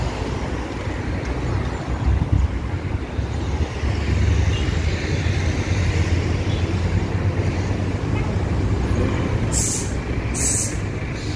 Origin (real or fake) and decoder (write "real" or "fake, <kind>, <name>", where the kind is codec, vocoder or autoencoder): real